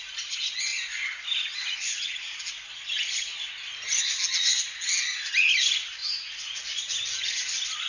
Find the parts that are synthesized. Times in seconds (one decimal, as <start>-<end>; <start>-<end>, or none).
none